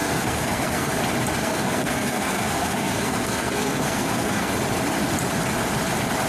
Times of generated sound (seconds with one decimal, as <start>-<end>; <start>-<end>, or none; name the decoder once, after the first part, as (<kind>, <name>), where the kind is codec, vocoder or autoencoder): 0.0-0.9 (codec, SNAC); 1.4-4.5